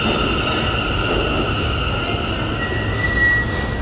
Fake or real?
real